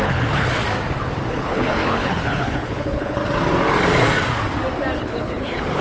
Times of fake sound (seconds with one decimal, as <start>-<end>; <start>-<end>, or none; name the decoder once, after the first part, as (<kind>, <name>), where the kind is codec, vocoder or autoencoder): 0.0-0.6 (codec, HILCodec); 1.3-3.2; 5.0-5.8